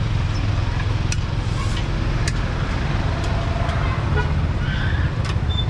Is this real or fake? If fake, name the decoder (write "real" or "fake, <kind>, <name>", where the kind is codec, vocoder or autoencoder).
real